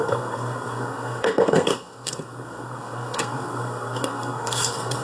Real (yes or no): no